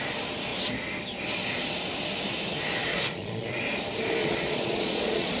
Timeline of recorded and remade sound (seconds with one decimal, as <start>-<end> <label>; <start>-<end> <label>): 0.0-2.9 recorded; 2.9-3.6 remade; 3.6-4.2 recorded; 4.2-5.4 remade